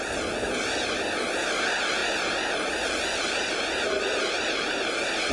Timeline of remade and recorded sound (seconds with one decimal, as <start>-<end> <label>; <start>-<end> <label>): 0.0-2.0 recorded; 2.0-5.3 remade